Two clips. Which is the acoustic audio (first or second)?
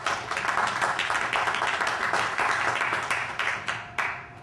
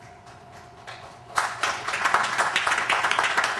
first